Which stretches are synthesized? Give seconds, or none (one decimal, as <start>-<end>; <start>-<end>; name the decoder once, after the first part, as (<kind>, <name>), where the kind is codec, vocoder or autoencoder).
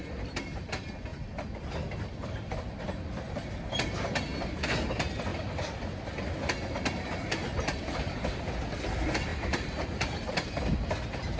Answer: 9.3-10.6 (vocoder, BigVGAN v2)